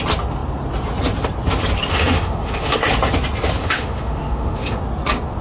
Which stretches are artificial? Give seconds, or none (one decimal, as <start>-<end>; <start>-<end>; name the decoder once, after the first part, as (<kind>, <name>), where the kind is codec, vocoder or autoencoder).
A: 1.9-2.8 (autoencoder, DAC-VAE); 3.6-4.8